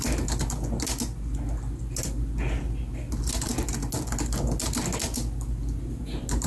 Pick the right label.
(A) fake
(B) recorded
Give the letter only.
B